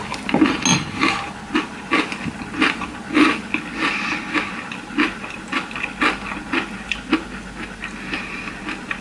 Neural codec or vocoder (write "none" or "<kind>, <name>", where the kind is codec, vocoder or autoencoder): none